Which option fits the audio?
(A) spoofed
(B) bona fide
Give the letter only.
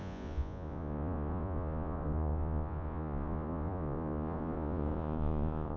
A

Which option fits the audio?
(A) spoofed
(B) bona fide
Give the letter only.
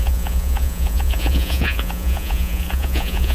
A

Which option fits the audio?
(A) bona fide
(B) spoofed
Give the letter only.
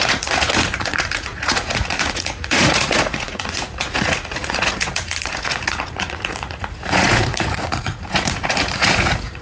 B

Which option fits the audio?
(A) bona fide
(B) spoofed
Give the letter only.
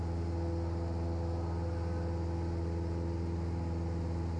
A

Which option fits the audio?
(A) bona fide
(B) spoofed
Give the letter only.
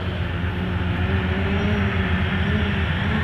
A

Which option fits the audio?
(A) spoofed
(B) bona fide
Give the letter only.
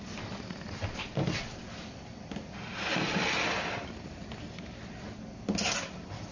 B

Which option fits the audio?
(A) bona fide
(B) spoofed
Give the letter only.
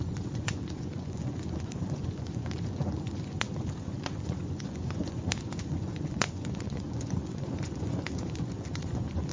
B